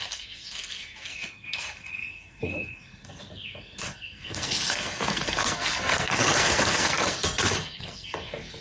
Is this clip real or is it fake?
fake